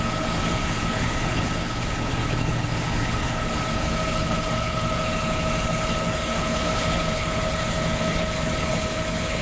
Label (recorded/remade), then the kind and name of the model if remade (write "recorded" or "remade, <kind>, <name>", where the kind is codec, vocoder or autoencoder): remade, codec, HILCodec